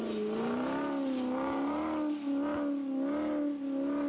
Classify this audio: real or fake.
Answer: real